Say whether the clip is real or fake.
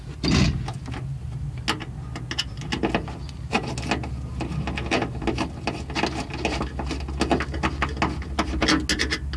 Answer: real